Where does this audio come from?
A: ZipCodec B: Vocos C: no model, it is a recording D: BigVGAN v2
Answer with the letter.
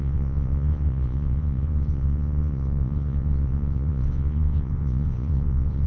B